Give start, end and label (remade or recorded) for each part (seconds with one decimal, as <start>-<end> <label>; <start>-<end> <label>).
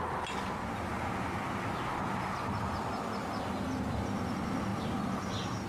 0.0-5.7 recorded